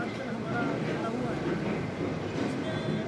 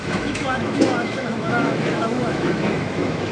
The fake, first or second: second